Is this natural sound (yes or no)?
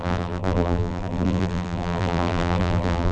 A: no